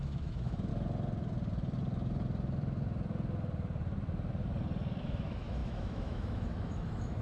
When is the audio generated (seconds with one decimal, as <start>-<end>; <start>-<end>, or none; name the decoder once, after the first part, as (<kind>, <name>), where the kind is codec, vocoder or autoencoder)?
0.0-0.7 (autoencoder, DAC-VAE); 5.0-7.2